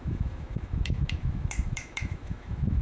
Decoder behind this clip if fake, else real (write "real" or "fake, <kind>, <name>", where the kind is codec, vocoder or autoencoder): fake, autoencoder, DAC-VAE